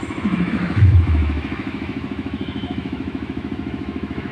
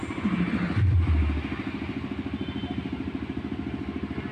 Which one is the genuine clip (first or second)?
second